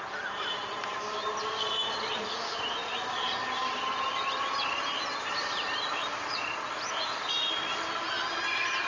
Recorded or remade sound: recorded